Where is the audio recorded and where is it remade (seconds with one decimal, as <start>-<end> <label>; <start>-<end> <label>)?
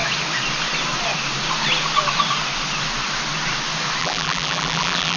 0.0-4.0 recorded; 4.0-5.2 remade